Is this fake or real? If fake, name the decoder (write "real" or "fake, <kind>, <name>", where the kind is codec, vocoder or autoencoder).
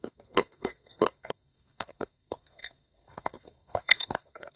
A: fake, codec, SNAC